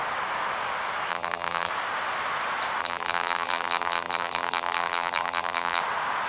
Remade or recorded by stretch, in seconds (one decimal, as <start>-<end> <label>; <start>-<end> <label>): 0.0-1.1 recorded; 1.1-1.7 remade; 1.7-2.8 recorded; 2.8-5.8 remade; 5.8-6.3 recorded

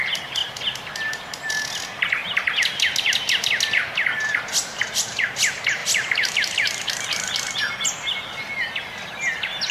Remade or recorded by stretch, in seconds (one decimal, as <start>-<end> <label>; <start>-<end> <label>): 0.0-4.6 recorded; 4.6-5.2 remade; 5.2-5.8 recorded; 5.8-6.3 remade; 6.3-9.7 recorded